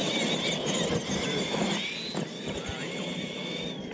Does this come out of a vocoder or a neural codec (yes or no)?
no